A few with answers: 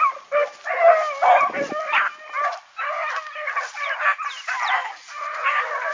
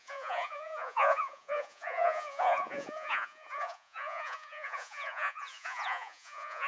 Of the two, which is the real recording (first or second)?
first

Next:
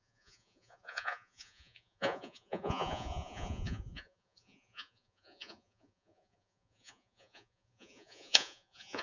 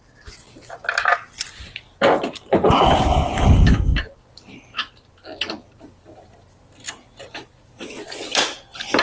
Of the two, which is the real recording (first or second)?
second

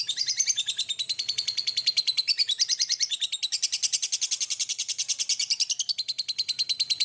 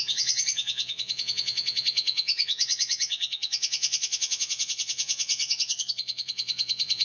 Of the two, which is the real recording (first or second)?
first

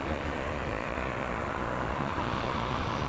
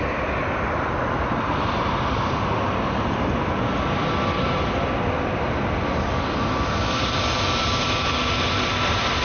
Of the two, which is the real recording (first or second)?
second